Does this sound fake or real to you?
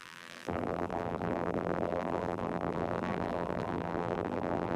fake